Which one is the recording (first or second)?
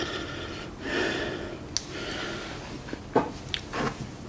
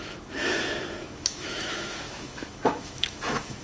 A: first